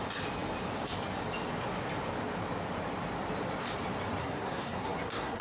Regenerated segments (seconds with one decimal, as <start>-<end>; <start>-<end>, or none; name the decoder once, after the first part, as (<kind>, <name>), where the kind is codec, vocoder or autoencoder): 4.2-5.4 (codec, SNAC)